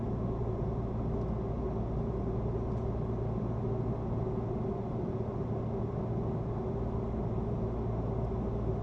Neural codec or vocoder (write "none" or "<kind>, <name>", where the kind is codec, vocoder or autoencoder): none